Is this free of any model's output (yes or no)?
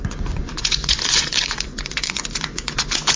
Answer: no